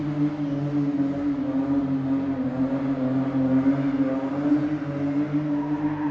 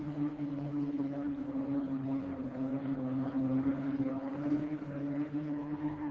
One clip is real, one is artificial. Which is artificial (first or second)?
second